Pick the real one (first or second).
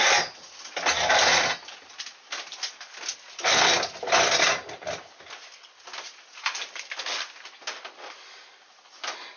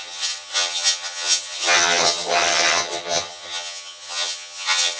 first